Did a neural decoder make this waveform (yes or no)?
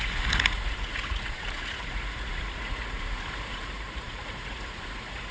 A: yes